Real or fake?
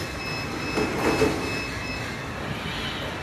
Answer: real